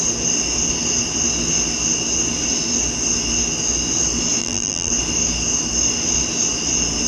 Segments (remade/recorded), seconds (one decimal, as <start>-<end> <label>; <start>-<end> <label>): 0.0-4.4 recorded; 4.4-4.9 remade; 4.9-7.1 recorded